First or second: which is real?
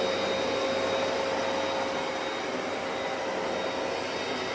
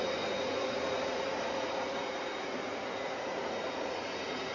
first